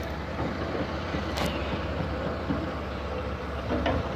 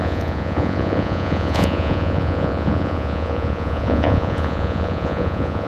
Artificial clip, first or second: second